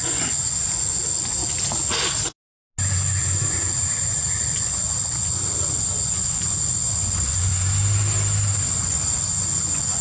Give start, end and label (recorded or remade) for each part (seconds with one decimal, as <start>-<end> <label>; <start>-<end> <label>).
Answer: 0.0-1.4 remade; 1.4-2.9 recorded; 2.9-3.8 remade; 3.8-4.3 recorded; 4.3-7.5 remade; 7.5-8.7 recorded; 8.7-10.0 remade